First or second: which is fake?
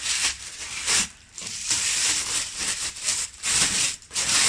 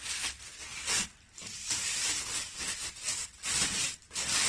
first